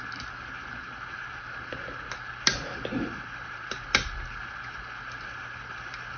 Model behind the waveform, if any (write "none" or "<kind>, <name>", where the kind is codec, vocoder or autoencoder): none